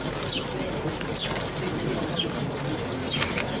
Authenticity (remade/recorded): recorded